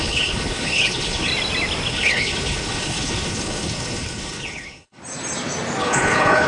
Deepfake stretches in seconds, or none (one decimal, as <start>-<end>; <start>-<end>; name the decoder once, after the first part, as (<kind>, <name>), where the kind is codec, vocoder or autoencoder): 0.0-1.3 (codec, HILCodec); 1.9-5.0; 5.8-6.5

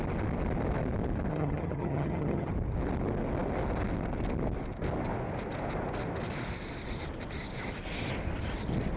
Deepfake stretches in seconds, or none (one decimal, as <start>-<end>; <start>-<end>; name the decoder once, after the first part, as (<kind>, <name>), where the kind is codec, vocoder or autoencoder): 1.3-2.5 (vocoder, HiFi-GAN)